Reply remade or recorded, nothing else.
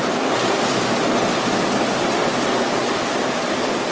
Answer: recorded